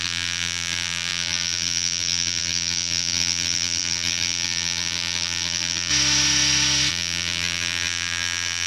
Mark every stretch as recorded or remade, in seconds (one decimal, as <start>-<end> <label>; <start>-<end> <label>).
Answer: 0.0-5.9 remade; 5.9-6.9 recorded; 6.9-8.7 remade